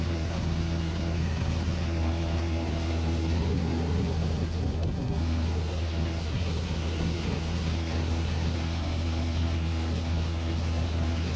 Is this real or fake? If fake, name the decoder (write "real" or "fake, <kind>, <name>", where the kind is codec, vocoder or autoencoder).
fake, codec, SNAC